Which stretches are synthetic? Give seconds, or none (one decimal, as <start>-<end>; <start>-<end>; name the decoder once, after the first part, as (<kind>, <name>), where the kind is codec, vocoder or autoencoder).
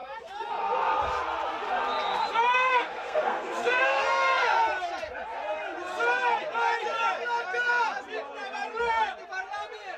0.0-0.5 (codec, SNAC); 2.7-4.6